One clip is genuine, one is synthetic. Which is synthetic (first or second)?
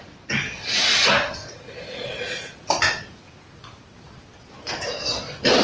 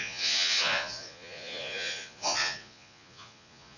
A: second